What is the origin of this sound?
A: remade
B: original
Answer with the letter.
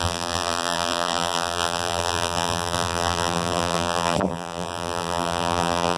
A